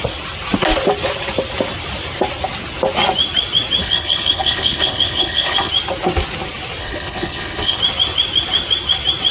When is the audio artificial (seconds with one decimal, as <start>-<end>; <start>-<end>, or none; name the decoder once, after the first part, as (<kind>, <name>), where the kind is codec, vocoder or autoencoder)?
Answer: 3.8-5.7 (codec, HILCodec); 6.8-7.8